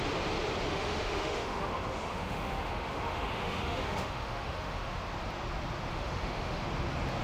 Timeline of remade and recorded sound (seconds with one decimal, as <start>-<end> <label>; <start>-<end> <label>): 0.0-0.7 recorded; 0.7-5.0 remade; 5.0-5.9 recorded; 5.9-6.6 remade; 6.6-7.2 recorded